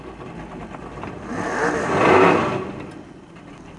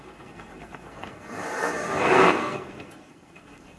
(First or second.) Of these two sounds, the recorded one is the first